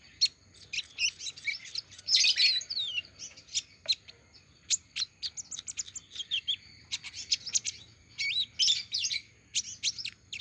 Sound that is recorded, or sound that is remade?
recorded